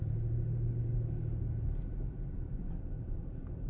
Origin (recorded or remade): recorded